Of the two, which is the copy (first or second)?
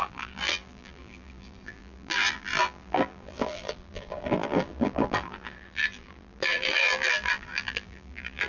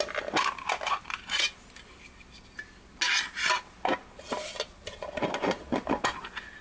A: first